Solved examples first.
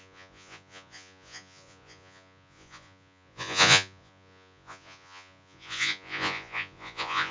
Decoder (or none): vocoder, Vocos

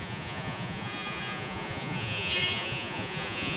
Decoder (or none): vocoder, Vocos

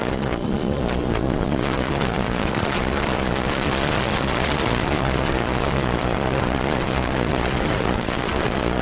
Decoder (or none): vocoder, Vocos